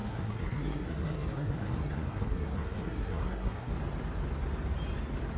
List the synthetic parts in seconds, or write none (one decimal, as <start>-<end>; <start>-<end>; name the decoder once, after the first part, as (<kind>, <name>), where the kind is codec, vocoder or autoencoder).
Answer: 0.0-3.7 (codec, SNAC)

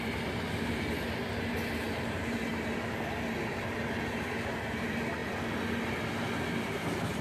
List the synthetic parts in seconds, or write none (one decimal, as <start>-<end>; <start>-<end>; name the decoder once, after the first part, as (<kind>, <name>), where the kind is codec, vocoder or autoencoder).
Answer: none